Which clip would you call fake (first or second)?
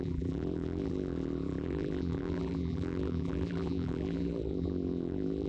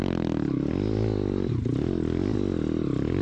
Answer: first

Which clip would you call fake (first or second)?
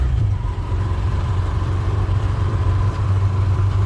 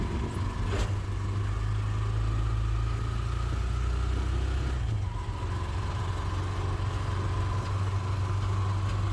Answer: first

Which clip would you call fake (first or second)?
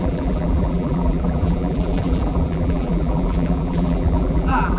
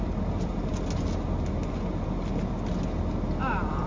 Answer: first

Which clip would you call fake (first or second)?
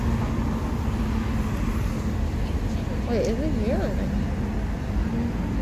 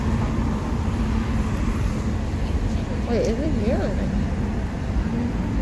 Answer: second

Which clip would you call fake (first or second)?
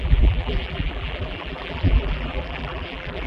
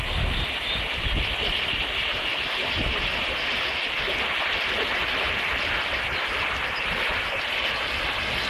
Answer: first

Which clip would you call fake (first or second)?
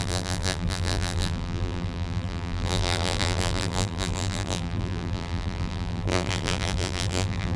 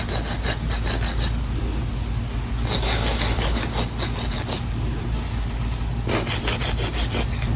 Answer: first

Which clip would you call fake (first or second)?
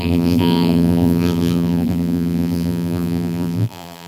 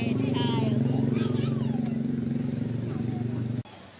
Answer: first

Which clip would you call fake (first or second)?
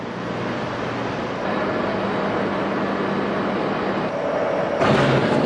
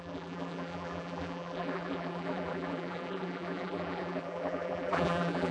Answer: second